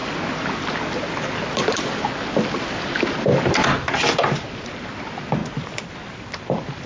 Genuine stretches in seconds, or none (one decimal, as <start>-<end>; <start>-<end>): 0.0-6.9